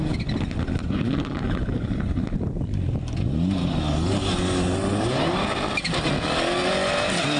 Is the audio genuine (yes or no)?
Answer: yes